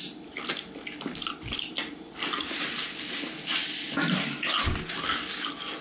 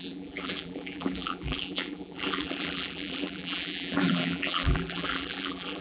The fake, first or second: second